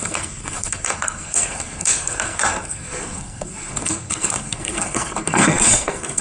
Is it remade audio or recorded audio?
remade